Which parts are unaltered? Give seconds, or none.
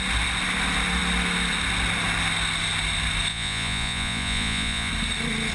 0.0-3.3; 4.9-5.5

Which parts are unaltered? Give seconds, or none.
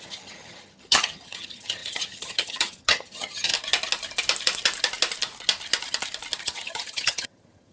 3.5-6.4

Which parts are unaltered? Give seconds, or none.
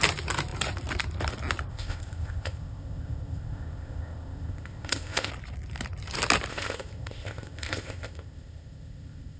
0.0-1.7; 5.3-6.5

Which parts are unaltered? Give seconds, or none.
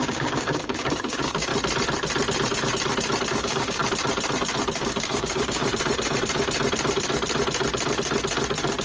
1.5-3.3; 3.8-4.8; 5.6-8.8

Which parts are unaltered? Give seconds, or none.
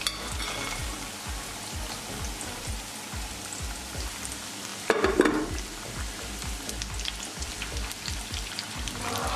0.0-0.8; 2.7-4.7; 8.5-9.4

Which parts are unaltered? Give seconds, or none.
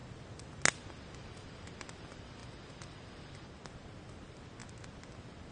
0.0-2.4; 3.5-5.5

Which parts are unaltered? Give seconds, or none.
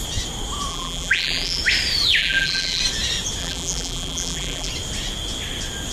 0.0-0.7; 1.6-2.2; 2.8-3.4; 4.7-5.9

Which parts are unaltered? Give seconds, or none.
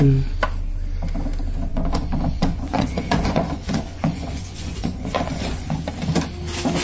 0.0-1.7; 5.8-6.8